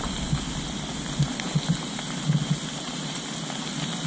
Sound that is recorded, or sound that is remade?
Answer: recorded